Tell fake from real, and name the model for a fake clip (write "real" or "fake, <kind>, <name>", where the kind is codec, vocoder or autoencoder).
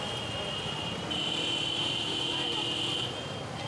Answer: real